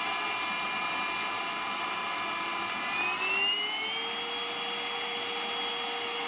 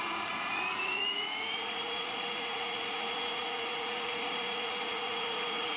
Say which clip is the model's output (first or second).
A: second